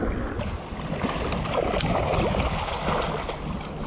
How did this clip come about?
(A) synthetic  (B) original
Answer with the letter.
B